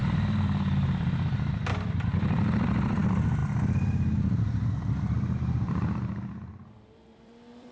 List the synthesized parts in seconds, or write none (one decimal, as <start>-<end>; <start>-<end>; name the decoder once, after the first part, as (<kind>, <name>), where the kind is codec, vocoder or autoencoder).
0.0-3.4 (vocoder, BigVGAN v2); 4.7-7.7